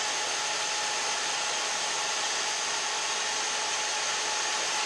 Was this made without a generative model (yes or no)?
yes